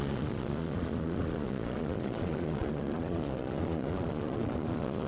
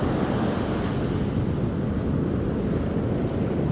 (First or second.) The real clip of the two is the second